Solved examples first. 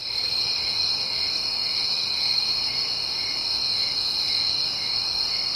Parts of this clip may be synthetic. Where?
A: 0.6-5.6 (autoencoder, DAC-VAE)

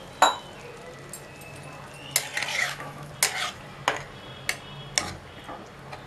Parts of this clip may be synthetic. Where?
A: 2.5-3.1 (autoencoder, DAC-VAE)